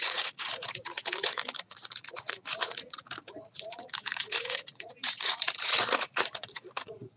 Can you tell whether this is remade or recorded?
remade